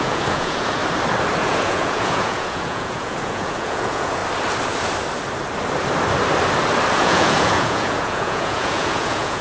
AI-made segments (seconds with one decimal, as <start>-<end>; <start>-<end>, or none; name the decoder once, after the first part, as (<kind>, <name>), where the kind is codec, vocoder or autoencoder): 0.0-0.8 (vocoder, Vocos); 1.4-4.2; 6.9-9.4